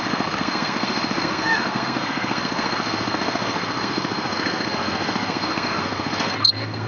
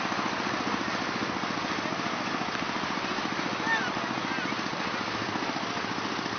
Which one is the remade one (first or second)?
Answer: first